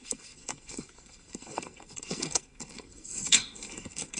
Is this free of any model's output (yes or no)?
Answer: no